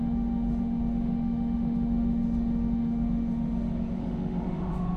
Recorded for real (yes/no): no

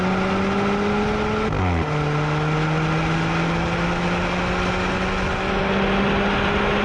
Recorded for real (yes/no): yes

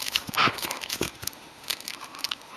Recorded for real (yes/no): no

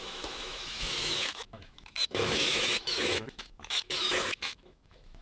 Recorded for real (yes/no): no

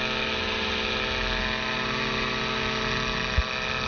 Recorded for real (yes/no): yes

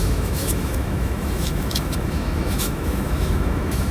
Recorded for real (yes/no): no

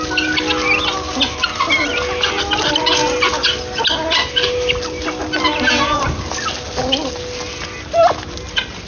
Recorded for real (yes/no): yes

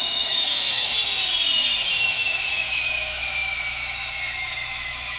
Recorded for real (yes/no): no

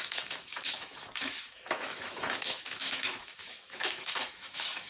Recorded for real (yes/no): no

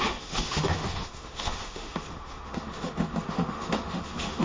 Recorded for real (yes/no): no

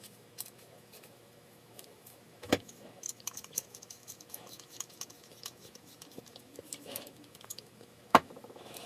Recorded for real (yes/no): no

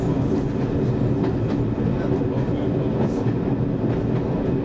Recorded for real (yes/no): yes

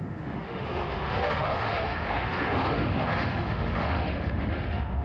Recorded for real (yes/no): no